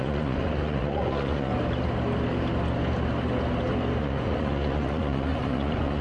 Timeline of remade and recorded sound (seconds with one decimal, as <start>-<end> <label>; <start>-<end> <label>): 0.0-1.5 remade; 1.5-4.0 recorded; 4.0-6.0 remade